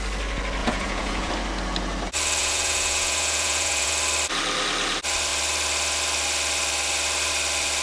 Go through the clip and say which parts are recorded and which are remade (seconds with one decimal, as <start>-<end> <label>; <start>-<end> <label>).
0.0-0.6 recorded; 0.6-1.3 remade; 1.3-2.4 recorded; 2.4-3.9 remade; 3.9-7.8 recorded

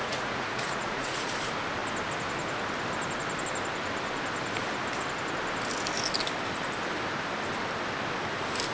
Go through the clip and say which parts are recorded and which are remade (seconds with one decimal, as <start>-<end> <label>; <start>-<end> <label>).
0.0-1.3 remade; 1.3-8.7 recorded

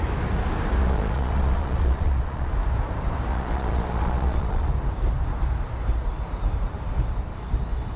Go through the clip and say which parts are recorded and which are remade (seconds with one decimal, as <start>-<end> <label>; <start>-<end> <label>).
0.0-0.8 recorded; 0.8-2.5 remade; 2.5-3.3 recorded; 3.3-4.7 remade; 4.7-8.0 recorded

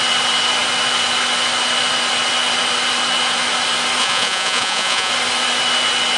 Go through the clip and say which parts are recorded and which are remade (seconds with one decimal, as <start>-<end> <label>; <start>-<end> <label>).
0.0-4.0 recorded; 4.0-5.1 remade; 5.1-6.2 recorded